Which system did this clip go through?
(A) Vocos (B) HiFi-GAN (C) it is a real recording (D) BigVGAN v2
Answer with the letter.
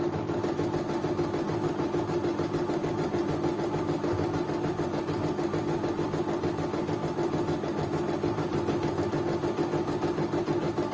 C